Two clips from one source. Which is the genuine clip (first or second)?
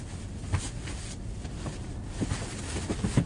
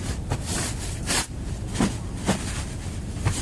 first